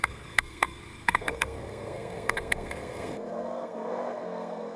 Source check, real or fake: fake